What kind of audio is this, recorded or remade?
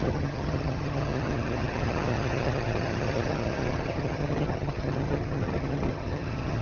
remade